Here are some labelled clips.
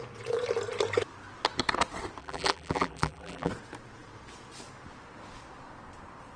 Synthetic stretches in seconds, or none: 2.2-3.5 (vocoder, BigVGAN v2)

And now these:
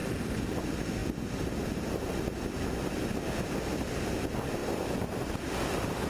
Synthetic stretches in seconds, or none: 0.0-0.6 (vocoder, BigVGAN v2); 4.6-6.1

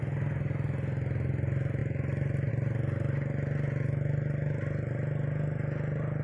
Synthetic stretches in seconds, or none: none

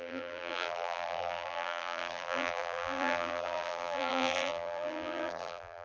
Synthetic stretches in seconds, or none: 0.0-5.8 (vocoder, BigVGAN v2)

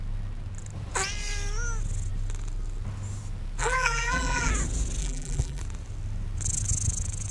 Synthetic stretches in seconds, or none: 3.6-4.5 (vocoder, BigVGAN v2); 5.0-5.6

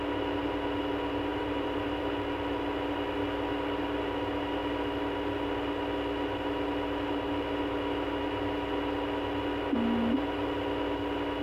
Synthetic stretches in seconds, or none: 1.3-2.0 (vocoder, BigVGAN v2)

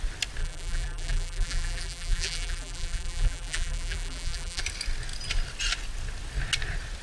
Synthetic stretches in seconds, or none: 0.4-4.6 (vocoder, BigVGAN v2)